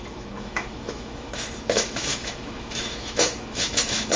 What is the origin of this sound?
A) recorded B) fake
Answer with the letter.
B